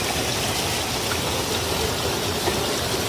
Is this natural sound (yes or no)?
yes